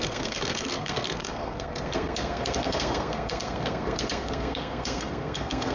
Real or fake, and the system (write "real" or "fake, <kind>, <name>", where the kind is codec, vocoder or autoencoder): fake, codec, SNAC